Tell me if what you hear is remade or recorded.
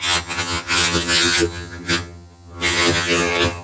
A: remade